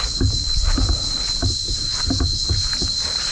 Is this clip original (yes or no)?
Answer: yes